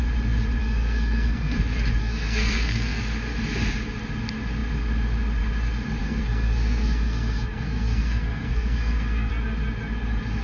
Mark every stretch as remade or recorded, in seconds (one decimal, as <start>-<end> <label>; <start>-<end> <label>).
0.0-0.6 recorded; 0.6-1.6 remade; 1.6-2.0 recorded; 2.0-3.0 remade; 3.0-6.0 recorded; 6.0-9.3 remade; 9.3-10.4 recorded